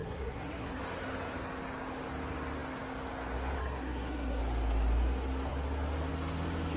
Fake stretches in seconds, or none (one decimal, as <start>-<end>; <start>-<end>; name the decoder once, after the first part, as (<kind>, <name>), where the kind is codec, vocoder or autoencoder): 0.0-0.8 (codec, SNAC); 3.6-4.4